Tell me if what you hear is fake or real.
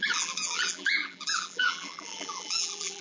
fake